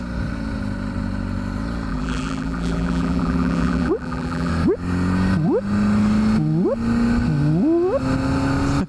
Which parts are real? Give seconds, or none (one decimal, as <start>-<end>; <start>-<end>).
0.0-1.9; 4.5-8.9